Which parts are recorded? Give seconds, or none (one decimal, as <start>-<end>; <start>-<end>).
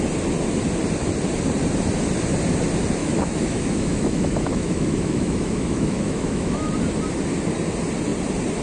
0.0-3.0; 6.7-8.6